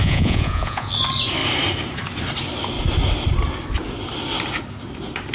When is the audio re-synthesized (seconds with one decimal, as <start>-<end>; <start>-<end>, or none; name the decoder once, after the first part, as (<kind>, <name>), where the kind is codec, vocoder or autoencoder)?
0.0-0.9 (vocoder, Vocos)